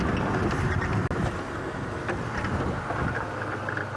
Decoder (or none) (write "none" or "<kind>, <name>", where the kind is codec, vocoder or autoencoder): none